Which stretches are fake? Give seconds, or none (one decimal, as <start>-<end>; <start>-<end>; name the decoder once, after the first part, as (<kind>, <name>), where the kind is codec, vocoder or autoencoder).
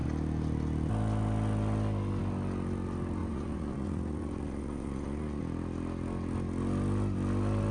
3.2-5.4 (vocoder, Vocos)